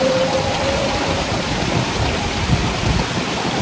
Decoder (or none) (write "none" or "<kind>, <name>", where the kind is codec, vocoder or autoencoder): vocoder, BigVGAN v2